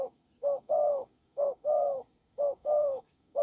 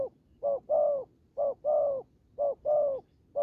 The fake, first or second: first